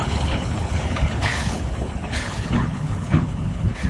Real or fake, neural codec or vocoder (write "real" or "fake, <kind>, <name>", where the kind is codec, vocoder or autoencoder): fake, codec, HILCodec